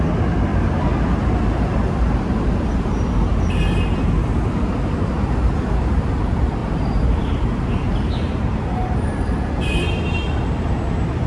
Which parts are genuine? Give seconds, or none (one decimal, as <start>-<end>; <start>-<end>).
0.0-0.5; 3.6-6.6; 9.1-11.3